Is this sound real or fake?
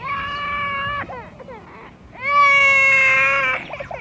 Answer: real